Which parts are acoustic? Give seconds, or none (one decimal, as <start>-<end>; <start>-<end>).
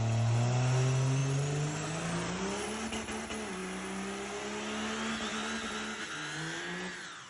0.0-7.3